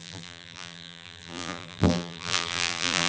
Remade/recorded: remade